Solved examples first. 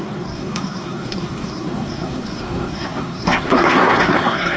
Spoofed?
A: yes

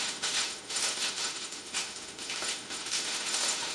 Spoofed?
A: yes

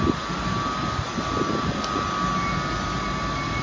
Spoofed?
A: no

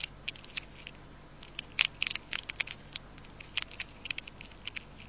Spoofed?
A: no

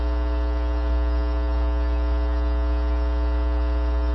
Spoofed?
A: no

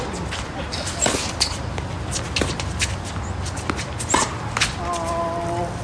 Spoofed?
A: no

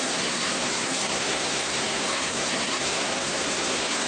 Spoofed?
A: yes